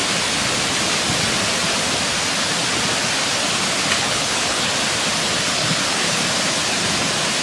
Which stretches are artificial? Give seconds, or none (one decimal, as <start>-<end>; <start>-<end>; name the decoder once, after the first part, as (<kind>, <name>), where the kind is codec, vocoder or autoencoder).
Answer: 3.9-4.7 (codec, HILCodec); 5.5-6.2